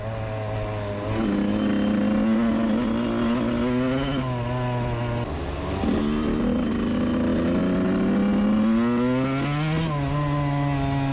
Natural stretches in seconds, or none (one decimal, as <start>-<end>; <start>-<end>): 0.0-11.1